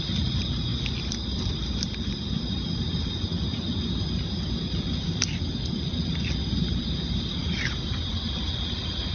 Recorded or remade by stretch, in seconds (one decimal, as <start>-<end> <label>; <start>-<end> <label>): 0.0-0.7 recorded; 0.7-2.4 remade; 2.4-7.4 recorded; 7.4-8.1 remade; 8.1-9.1 recorded